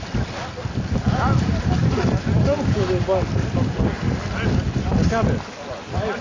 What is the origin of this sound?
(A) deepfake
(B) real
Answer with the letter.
B